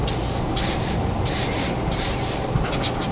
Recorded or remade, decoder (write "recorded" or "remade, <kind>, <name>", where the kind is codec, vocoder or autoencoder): recorded